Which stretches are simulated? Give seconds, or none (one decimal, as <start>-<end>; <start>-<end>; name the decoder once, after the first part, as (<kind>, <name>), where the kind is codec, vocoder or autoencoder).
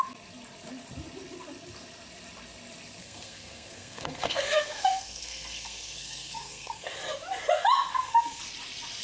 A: 3.0-6.9 (codec, SNAC); 7.9-8.4